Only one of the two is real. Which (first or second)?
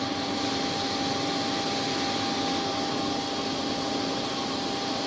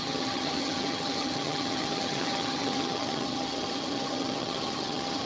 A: first